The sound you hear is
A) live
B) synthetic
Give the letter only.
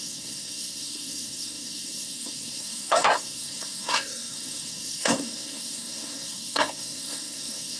B